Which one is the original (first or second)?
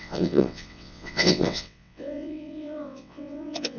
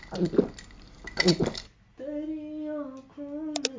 second